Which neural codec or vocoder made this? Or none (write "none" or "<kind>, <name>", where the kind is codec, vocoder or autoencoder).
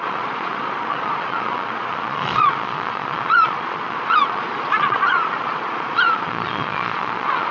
vocoder, Vocos